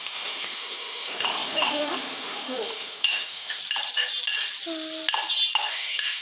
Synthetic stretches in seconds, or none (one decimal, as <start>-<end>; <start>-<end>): 0.0-3.6; 5.7-6.2